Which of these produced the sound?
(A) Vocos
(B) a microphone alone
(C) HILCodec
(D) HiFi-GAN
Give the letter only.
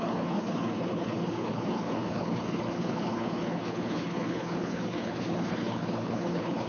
C